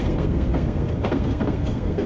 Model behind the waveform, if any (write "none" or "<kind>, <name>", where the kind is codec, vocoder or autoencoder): codec, SNAC